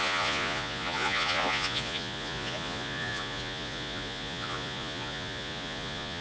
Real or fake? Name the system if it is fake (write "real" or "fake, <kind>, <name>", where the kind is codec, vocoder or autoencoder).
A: fake, vocoder, Vocos